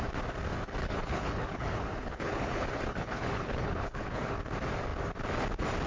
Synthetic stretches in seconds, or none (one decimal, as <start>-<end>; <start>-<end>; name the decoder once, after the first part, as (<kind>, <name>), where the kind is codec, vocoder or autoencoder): 0.8-4.3 (codec, HILCodec)